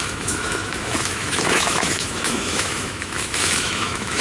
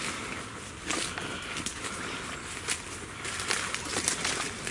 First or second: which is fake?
first